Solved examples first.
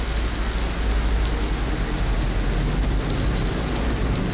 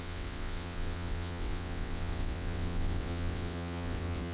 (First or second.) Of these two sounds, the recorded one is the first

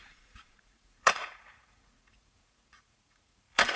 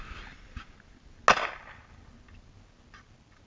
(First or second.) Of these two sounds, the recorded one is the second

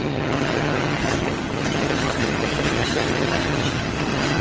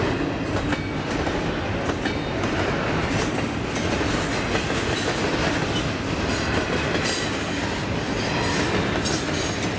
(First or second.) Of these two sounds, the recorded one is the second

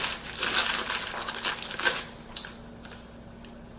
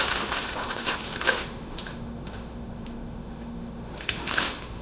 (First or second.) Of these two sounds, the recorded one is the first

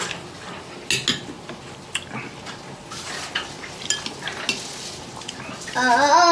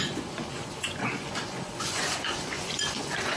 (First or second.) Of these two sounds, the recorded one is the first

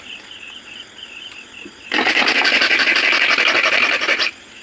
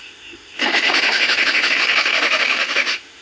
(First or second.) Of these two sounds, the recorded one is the first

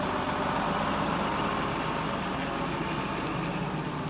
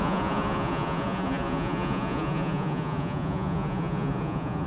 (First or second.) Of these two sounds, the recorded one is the first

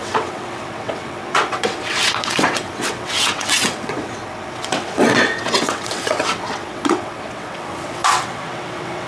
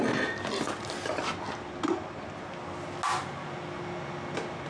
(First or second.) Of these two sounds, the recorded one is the second